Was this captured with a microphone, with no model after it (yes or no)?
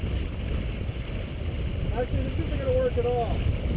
yes